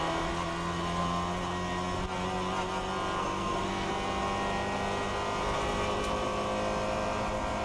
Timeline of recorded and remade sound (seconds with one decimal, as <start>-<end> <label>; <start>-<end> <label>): 0.0-3.2 recorded; 3.2-3.9 remade; 3.9-7.6 recorded